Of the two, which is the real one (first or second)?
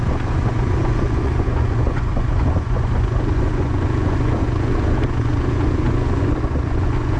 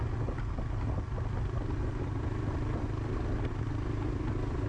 second